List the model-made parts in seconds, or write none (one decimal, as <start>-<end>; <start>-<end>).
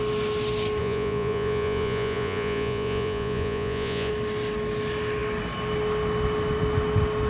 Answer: 0.8-4.1